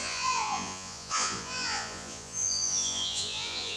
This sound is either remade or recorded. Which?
remade